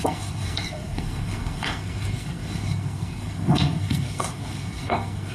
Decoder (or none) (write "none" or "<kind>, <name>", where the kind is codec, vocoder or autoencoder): codec, SNAC